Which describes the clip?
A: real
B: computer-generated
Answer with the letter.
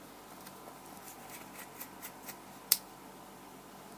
A